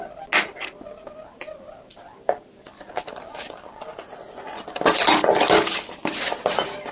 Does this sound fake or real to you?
real